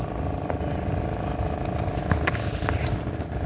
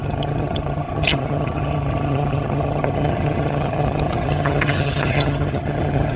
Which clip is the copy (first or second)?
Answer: second